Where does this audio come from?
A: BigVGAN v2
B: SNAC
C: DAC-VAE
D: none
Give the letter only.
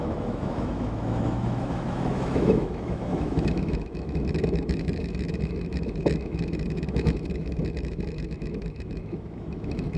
C